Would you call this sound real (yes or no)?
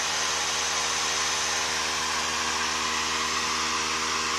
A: yes